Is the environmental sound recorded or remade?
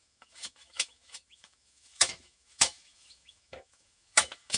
remade